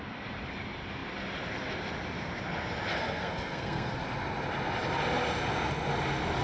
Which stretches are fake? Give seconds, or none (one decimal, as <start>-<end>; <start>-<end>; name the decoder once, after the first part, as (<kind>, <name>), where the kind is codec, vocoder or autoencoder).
2.9-3.9 (codec, SNAC)